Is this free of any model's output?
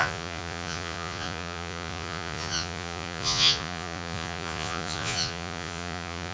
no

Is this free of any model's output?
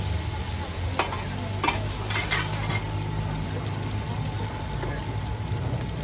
yes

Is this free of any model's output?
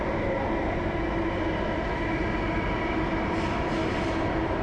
yes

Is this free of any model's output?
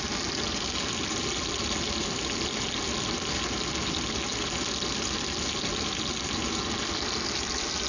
yes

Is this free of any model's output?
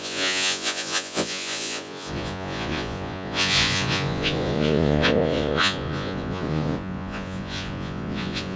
no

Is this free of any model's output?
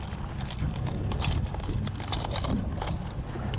yes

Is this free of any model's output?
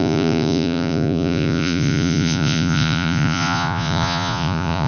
no